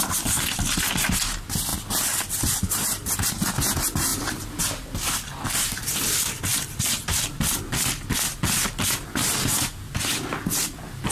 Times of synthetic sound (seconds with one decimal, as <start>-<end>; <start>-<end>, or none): 1.7-3.1; 6.5-7.6